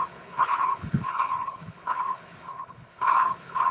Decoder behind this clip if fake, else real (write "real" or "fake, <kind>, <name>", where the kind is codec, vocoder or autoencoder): fake, codec, HILCodec